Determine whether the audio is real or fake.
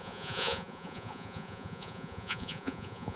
fake